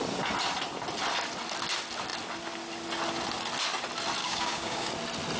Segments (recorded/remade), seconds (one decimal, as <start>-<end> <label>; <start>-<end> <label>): 0.0-4.2 recorded; 4.2-4.9 remade; 4.9-5.4 recorded